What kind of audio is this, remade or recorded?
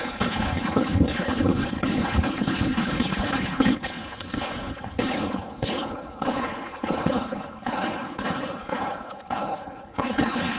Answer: remade